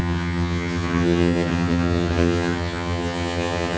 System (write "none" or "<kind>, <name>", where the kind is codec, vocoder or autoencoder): vocoder, HiFi-GAN